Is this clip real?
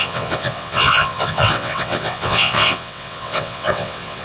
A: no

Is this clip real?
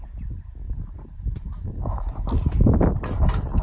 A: yes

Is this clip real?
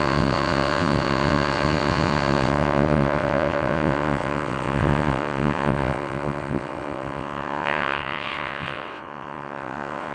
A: no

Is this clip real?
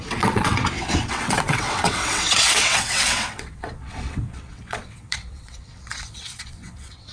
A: no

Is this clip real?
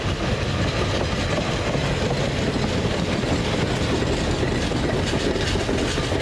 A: yes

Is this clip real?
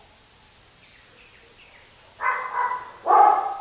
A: yes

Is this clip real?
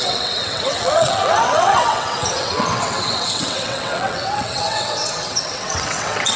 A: no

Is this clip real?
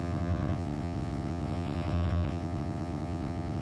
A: no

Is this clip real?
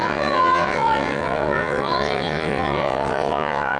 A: no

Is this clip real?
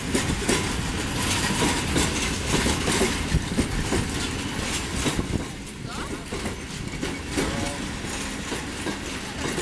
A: yes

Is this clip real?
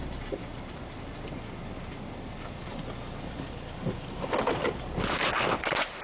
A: yes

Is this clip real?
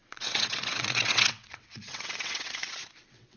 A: no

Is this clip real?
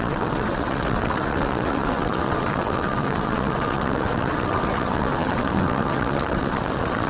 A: no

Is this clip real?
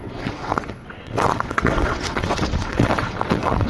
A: no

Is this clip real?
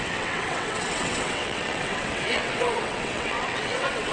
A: no